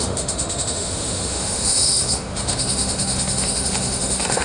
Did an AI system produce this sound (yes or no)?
yes